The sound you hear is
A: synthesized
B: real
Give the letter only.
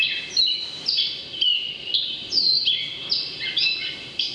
B